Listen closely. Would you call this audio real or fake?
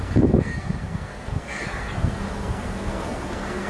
fake